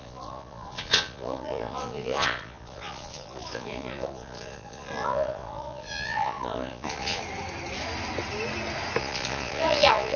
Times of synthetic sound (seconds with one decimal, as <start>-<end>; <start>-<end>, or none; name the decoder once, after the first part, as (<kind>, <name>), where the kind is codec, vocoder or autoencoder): 0.0-7.2 (vocoder, Vocos); 9.0-10.2